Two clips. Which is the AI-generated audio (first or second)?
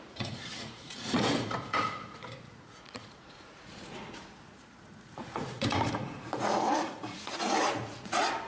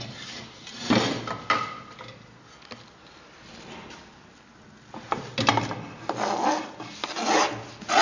first